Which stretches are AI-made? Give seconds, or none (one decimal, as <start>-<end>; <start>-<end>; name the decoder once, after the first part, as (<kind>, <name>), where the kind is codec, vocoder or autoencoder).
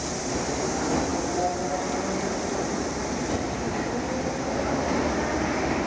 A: none